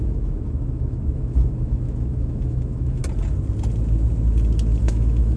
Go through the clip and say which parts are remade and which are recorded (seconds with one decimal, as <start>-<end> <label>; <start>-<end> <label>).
0.0-3.0 remade; 3.0-4.8 recorded; 4.8-5.4 remade